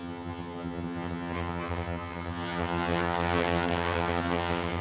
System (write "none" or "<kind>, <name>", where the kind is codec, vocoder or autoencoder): vocoder, HiFi-GAN